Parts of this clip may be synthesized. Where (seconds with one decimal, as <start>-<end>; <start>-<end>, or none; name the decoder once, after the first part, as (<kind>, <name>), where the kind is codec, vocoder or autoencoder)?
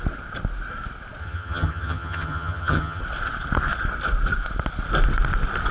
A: 1.2-3.0 (vocoder, HiFi-GAN)